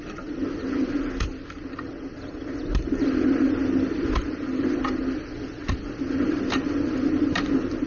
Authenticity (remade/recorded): recorded